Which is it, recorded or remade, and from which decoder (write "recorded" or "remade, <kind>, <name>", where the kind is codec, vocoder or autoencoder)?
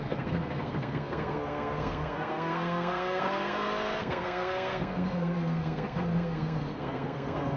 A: remade, codec, SNAC